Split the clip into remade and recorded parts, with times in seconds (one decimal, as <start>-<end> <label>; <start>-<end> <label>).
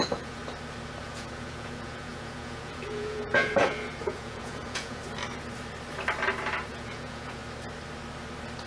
0.0-0.4 remade; 0.4-1.0 recorded; 1.0-5.0 remade; 5.0-6.7 recorded; 6.7-7.4 remade; 7.4-8.7 recorded